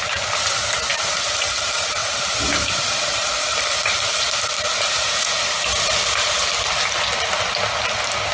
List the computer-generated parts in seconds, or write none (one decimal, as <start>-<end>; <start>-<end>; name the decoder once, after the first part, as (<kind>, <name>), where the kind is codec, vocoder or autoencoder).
4.9-5.4 (vocoder, Vocos)